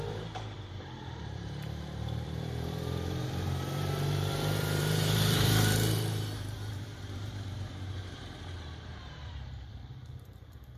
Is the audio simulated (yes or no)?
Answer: yes